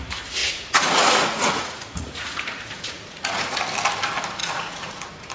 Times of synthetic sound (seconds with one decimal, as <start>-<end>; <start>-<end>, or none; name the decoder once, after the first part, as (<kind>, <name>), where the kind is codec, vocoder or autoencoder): 0.4-3.6 (vocoder, Vocos); 4.4-5.3